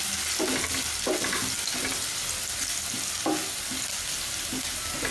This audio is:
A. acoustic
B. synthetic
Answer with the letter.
A